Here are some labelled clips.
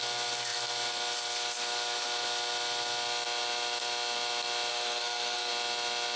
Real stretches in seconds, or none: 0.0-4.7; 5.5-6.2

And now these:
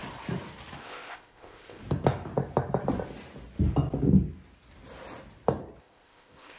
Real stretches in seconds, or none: 0.0-0.8; 1.8-5.8

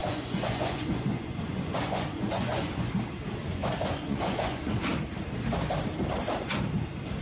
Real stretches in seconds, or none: 2.9-3.4; 4.8-7.2